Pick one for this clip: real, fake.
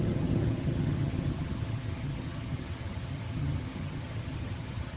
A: fake